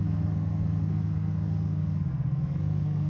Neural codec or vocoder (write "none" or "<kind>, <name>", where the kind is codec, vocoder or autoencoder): codec, SNAC